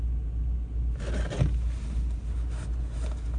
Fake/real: real